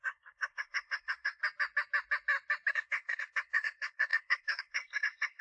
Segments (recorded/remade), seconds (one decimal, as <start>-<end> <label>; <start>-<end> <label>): 0.0-1.4 remade; 1.4-2.7 recorded; 2.7-5.4 remade